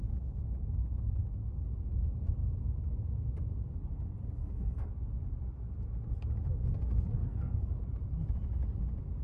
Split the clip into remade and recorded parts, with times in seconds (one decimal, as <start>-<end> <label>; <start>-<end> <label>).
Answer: 0.0-4.4 recorded; 4.4-4.9 remade; 4.9-6.6 recorded; 6.6-7.7 remade; 7.7-9.2 recorded